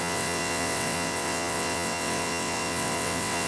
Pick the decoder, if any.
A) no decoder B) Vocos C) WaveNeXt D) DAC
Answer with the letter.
C